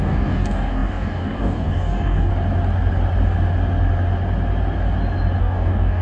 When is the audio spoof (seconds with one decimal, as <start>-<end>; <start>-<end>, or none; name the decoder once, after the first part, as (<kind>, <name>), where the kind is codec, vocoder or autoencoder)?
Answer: 0.0-2.3 (codec, DAC); 5.4-6.0